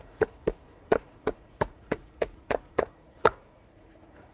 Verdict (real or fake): fake